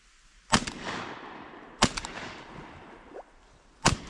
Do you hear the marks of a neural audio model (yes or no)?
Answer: no